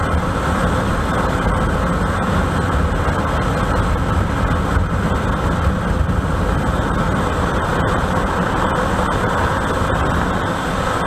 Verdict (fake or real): real